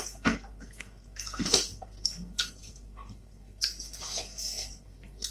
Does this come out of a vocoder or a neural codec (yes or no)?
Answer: yes